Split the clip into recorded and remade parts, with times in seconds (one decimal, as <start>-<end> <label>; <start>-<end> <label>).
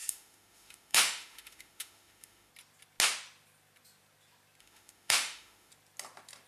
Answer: 0.0-2.5 remade; 2.5-4.6 recorded; 4.6-5.7 remade; 5.7-6.5 recorded